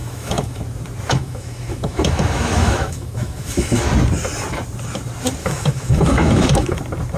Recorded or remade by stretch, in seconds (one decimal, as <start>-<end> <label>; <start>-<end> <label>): 0.0-0.6 remade; 0.6-1.1 recorded; 1.1-3.9 remade; 3.9-5.4 recorded; 5.4-6.8 remade; 6.8-7.2 recorded